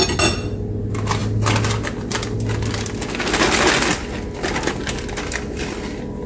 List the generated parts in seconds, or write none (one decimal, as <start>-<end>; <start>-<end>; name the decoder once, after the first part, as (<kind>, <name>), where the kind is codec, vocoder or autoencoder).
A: none